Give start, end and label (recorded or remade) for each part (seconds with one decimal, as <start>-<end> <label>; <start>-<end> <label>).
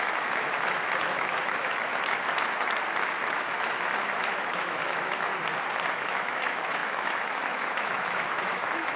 0.0-1.9 remade; 1.9-3.2 recorded; 3.2-5.3 remade; 5.3-5.9 recorded; 5.9-9.0 remade